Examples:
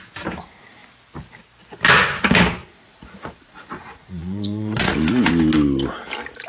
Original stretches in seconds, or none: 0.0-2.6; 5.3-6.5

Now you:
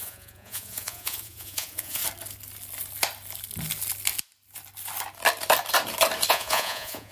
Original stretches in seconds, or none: 2.0-6.3

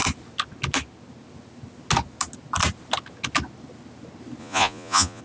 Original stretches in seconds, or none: 0.0-4.4

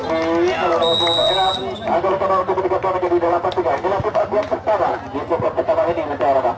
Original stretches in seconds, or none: 0.0-6.6

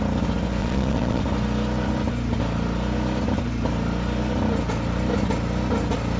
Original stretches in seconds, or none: 0.0-0.6; 1.2-6.2

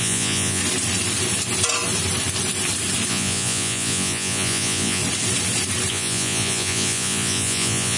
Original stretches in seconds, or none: 0.6-3.1; 5.0-5.9

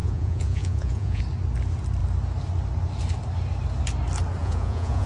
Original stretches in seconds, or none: 1.2-4.4

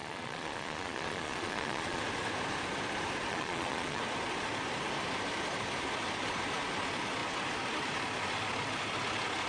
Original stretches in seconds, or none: 2.0-3.3; 4.0-9.5